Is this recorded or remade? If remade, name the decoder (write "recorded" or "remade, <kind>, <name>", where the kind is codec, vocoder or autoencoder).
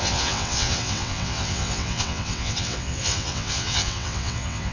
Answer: remade, vocoder, WaveNeXt